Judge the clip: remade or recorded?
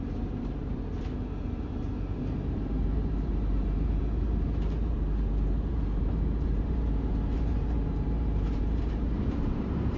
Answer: remade